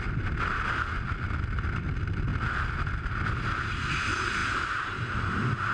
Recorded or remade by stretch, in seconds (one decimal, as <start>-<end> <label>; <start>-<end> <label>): 0.0-5.7 recorded